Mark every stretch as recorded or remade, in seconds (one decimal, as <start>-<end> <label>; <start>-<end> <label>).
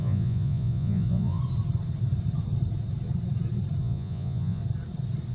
0.0-1.4 remade; 1.4-3.8 recorded; 3.8-4.6 remade; 4.6-5.3 recorded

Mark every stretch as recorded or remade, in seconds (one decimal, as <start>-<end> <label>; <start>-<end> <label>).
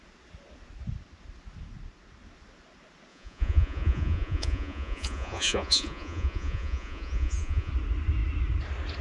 0.0-3.1 recorded; 3.1-7.7 remade; 7.7-9.0 recorded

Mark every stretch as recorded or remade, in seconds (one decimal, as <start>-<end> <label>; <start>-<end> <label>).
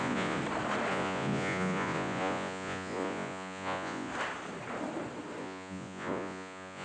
0.0-0.4 remade; 0.4-0.9 recorded; 0.9-4.1 remade; 4.1-5.4 recorded; 5.4-6.8 remade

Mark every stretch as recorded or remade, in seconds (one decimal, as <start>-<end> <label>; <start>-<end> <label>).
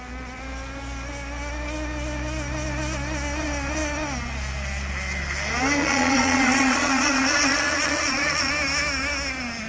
0.0-5.8 recorded; 5.8-8.5 remade; 8.5-9.7 recorded